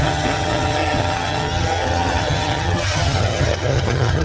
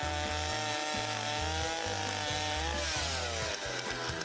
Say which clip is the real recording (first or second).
second